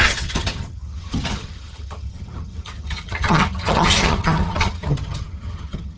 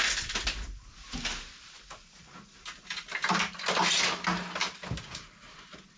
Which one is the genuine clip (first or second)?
second